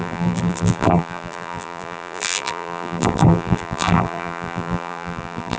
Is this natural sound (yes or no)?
no